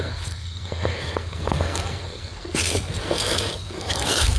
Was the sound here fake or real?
fake